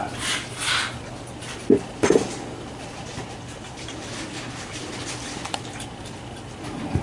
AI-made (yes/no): no